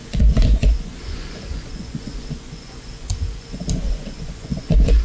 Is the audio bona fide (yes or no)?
no